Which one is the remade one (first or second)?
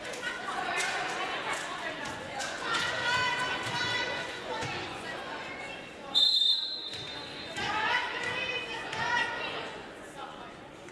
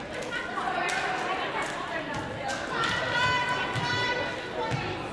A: first